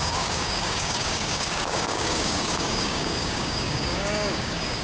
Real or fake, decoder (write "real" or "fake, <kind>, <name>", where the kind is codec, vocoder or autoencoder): fake, codec, DAC